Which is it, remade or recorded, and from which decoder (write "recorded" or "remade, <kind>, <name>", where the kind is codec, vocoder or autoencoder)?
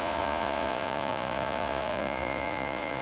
remade, vocoder, Vocos